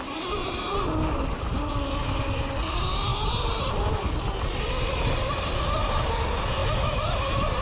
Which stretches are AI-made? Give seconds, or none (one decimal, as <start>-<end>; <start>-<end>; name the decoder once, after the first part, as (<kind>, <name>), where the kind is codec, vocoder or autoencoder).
none